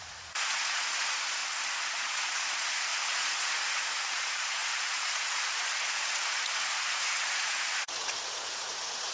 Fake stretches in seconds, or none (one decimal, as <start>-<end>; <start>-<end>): 0.0-1.4; 1.9-9.1